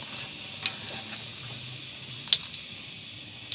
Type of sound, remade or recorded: recorded